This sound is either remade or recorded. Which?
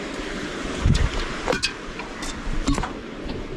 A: remade